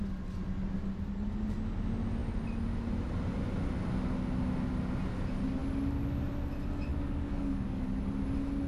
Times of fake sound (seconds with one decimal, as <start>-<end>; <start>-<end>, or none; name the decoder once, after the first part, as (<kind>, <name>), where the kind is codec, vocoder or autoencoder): 6.9-7.9 (codec, DAC)